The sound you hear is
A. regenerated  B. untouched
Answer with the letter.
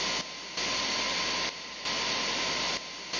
B